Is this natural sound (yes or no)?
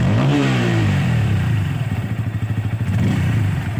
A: no